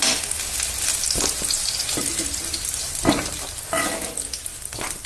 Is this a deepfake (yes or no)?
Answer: no